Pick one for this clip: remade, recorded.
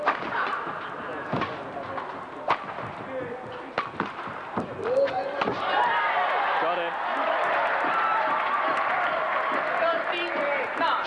recorded